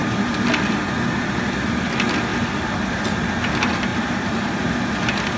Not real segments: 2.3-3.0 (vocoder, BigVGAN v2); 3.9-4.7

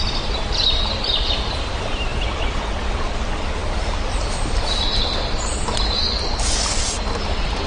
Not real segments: none

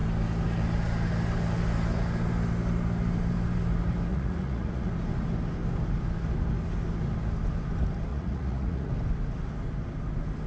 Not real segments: 4.1-4.9 (vocoder, Vocos); 8.1-8.9